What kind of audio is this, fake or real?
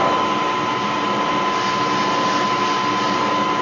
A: real